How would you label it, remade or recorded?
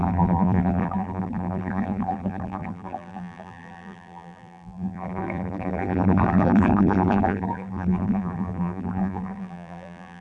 remade